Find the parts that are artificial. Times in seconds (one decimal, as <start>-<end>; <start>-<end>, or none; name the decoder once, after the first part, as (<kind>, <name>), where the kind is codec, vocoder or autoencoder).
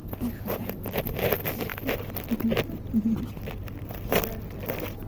none